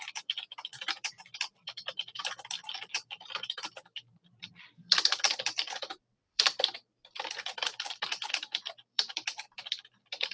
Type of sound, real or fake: fake